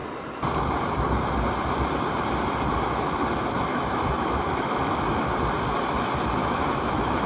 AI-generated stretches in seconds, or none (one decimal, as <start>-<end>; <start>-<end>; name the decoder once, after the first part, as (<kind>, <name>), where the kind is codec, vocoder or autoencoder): 3.7-5.0 (autoencoder, DAC-VAE); 6.4-7.3